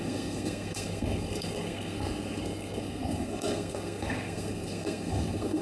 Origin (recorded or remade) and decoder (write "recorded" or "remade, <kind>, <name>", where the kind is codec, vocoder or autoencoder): remade, codec, SNAC